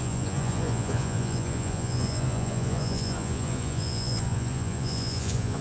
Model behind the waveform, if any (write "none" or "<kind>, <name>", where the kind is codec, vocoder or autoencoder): vocoder, Vocos